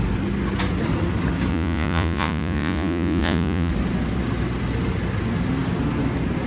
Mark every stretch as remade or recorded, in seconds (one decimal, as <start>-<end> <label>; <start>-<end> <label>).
0.0-1.5 recorded; 1.5-3.7 remade; 3.7-6.5 recorded